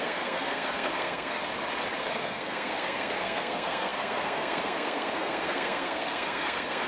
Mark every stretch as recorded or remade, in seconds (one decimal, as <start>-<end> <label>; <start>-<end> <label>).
0.0-1.4 remade; 1.4-2.0 recorded; 2.0-6.9 remade